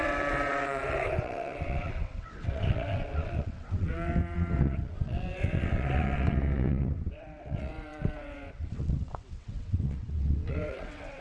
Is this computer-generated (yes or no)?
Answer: yes